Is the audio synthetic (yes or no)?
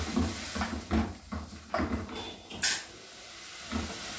no